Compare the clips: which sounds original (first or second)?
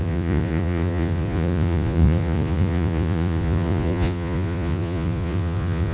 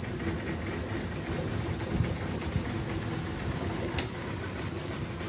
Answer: second